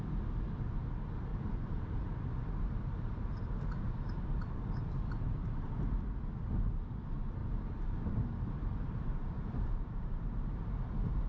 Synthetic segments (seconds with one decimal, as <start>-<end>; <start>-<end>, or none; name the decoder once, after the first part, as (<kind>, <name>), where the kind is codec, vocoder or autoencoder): 1.3-5.7 (vocoder, BigVGAN v2); 7.4-11.3